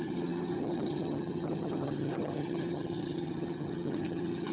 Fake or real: fake